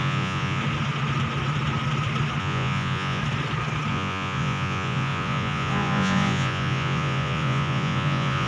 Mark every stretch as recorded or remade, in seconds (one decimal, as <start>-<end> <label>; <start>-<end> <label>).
0.0-0.6 remade; 0.6-2.4 recorded; 2.4-3.2 remade; 3.2-3.9 recorded; 3.9-8.5 remade